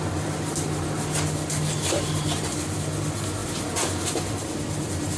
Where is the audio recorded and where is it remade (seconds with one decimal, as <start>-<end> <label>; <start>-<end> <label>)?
0.0-5.2 recorded